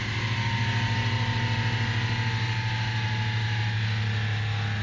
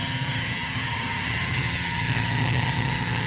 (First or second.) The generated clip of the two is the second